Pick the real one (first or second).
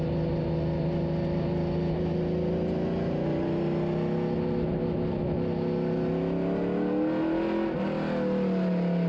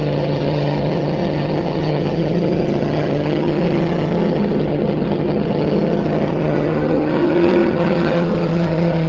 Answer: first